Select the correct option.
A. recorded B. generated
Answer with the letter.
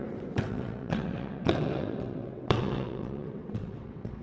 B